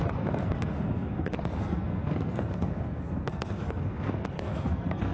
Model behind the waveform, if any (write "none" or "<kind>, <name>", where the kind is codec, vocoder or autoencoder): codec, SNAC